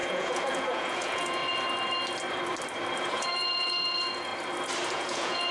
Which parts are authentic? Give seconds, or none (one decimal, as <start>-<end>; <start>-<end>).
1.4-3.0; 4.3-4.9